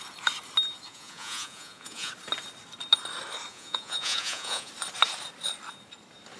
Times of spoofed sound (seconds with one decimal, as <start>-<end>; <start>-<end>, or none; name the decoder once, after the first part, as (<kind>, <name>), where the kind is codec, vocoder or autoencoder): 0.9-2.1 (vocoder, Vocos); 3.5-4.7